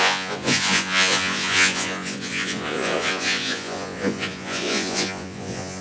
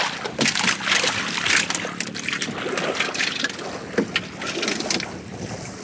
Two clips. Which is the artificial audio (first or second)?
first